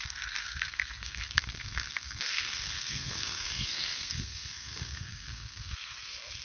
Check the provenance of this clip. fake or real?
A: fake